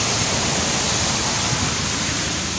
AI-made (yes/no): no